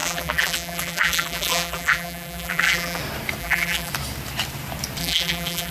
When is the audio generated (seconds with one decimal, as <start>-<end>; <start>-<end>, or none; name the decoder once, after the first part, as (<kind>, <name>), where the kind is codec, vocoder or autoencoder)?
0.0-3.0 (vocoder, BigVGAN v2); 3.4-3.9; 5.0-5.7